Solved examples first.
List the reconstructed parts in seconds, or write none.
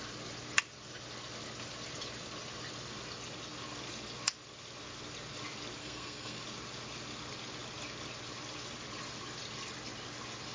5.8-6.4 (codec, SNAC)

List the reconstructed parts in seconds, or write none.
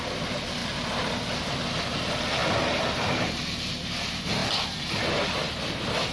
0.6-1.1 (vocoder, BigVGAN v2)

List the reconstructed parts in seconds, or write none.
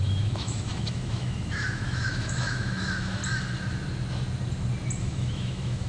0.0-3.2 (autoencoder, DAC-VAE); 5.0-5.9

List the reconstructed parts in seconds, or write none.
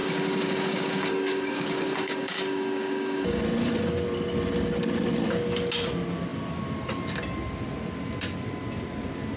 0.0-3.4 (codec, DAC)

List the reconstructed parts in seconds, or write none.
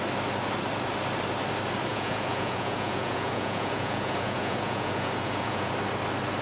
1.9-5.7 (vocoder, Vocos)